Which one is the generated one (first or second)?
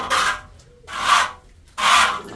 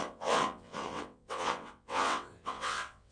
second